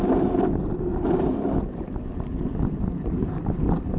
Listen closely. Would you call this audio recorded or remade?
remade